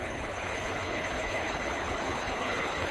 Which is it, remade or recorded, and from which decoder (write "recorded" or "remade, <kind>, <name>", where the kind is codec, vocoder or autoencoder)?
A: remade, codec, HILCodec